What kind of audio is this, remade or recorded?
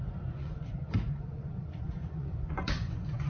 remade